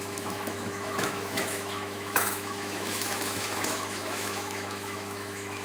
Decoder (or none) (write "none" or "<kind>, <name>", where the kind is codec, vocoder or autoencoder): autoencoder, DAC-VAE